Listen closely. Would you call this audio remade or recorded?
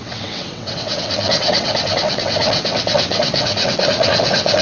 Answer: remade